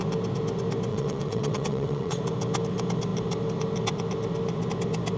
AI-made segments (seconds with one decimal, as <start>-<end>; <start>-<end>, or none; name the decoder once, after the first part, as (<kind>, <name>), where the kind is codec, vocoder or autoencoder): 0.9-2.2 (vocoder, WaveNeXt)